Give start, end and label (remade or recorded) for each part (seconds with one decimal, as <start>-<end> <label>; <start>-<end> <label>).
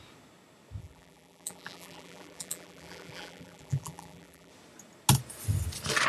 0.0-0.8 recorded; 0.8-4.5 remade; 4.5-6.1 recorded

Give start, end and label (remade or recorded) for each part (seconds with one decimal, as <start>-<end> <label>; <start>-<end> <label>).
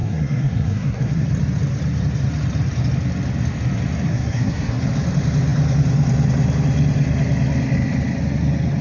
0.0-1.3 remade; 1.3-4.1 recorded; 4.1-4.8 remade; 4.8-8.8 recorded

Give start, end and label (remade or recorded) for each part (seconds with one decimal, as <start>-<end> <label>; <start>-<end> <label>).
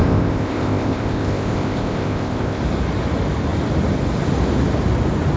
0.0-2.6 remade; 2.6-5.4 recorded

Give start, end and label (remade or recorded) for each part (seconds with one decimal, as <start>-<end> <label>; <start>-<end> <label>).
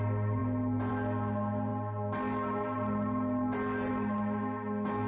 0.0-5.1 recorded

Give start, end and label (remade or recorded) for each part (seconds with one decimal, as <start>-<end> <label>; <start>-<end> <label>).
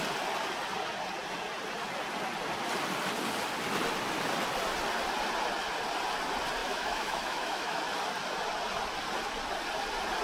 0.0-6.6 recorded; 6.6-7.8 remade; 7.8-10.2 recorded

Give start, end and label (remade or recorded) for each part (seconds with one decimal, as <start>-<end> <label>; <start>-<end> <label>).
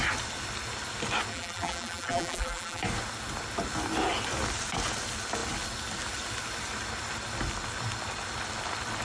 0.0-1.3 recorded; 1.3-2.8 remade; 2.8-9.0 recorded